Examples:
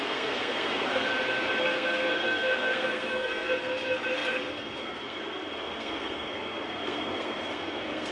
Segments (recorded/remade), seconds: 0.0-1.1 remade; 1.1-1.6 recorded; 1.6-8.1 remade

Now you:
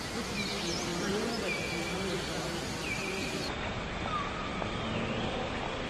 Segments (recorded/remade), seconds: 0.0-5.9 recorded

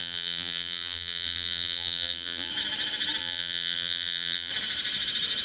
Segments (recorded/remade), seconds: 0.0-2.5 remade; 2.5-3.2 recorded; 3.2-4.5 remade; 4.5-5.4 recorded